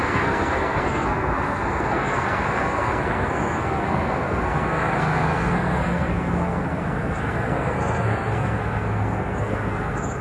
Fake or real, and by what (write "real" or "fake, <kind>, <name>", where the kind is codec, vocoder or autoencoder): fake, codec, SNAC